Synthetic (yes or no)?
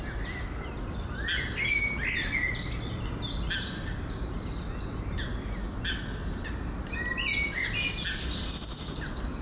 no